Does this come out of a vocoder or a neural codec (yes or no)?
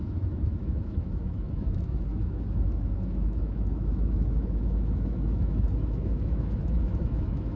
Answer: yes